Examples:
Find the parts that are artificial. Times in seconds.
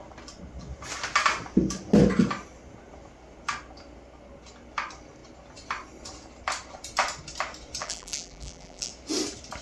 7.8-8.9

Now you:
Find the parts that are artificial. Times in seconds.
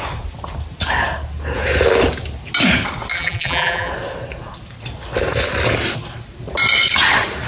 3.1-3.9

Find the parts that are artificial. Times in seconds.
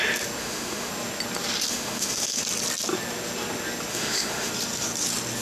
0.4-0.9; 1.7-2.4; 3.9-4.5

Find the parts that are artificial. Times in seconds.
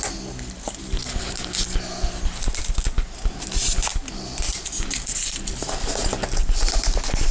none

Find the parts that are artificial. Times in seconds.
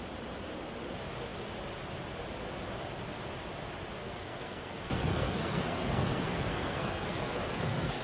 4.0-8.0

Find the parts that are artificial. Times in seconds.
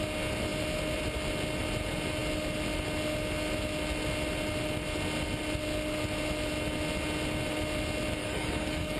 8.2-9.0